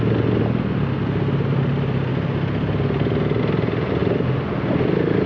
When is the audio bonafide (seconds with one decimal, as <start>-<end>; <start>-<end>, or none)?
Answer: 0.0-5.3